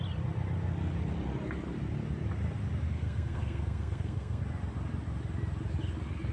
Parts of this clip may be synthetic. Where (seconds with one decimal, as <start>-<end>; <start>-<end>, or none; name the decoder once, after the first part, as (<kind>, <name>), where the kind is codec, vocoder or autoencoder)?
2.9-4.4 (codec, SNAC)